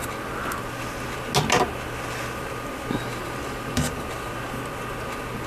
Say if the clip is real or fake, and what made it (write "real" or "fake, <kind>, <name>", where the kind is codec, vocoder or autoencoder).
real